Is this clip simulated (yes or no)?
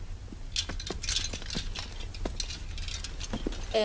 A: no